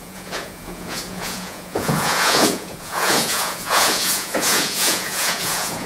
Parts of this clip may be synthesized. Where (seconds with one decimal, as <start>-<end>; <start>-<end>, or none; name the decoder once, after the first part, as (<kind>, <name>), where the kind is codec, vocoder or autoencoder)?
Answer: 0.0-5.9 (vocoder, Vocos)